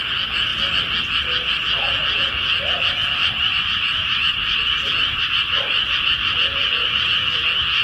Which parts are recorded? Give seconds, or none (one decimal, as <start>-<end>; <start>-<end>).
0.0-3.2; 4.6-5.0; 5.8-6.6; 7.1-7.8